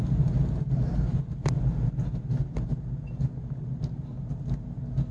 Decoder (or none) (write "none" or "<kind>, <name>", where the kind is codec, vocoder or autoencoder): none